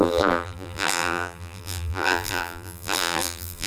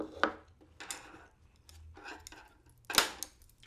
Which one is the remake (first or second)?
first